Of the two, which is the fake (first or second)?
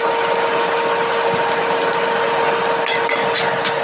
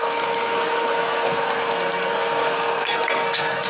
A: second